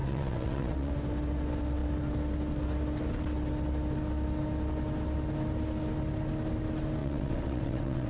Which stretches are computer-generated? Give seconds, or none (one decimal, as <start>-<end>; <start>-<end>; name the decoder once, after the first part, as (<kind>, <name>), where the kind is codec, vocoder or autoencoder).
0.0-0.9 (vocoder, WaveNeXt); 7.0-8.1